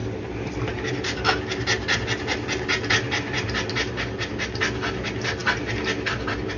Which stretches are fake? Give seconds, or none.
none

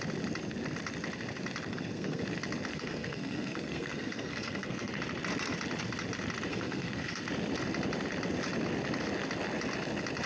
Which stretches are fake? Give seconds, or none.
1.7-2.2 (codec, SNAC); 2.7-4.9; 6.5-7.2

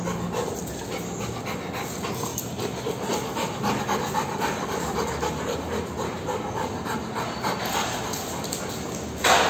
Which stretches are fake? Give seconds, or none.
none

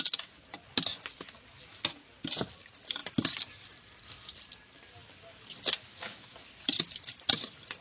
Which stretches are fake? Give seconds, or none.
none

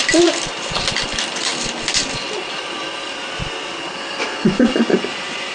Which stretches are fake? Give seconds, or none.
0.0-5.5 (vocoder, BigVGAN v2)